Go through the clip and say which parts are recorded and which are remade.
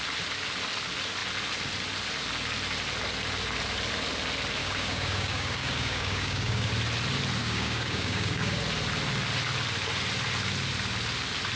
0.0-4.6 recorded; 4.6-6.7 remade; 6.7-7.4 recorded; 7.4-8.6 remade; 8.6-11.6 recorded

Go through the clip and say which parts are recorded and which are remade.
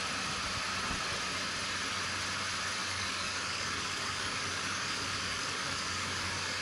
0.0-2.8 recorded; 2.8-6.6 remade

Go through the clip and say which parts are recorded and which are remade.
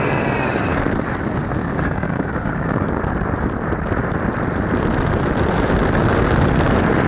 0.0-1.6 recorded; 1.6-3.0 remade; 3.0-7.1 recorded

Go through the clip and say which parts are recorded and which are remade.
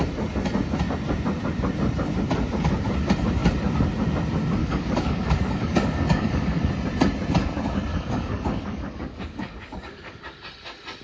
0.0-4.6 recorded; 4.6-6.7 remade; 6.7-7.9 recorded; 7.9-10.2 remade; 10.2-11.0 recorded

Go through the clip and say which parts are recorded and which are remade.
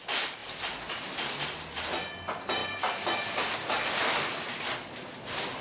0.0-5.6 recorded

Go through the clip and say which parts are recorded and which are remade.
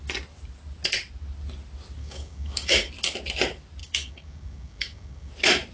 0.0-2.0 recorded; 2.0-2.9 remade; 2.9-3.8 recorded; 3.8-5.3 remade; 5.3-5.7 recorded